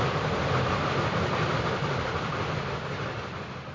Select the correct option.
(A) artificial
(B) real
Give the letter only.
A